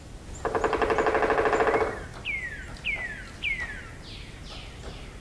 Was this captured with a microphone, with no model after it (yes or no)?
yes